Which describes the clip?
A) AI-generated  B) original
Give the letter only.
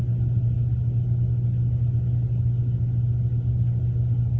B